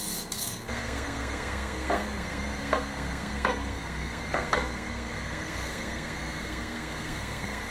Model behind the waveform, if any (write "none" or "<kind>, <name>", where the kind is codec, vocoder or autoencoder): codec, SNAC